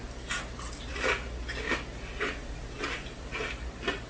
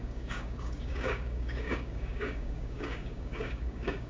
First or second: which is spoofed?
second